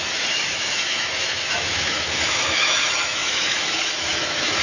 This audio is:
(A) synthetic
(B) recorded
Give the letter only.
A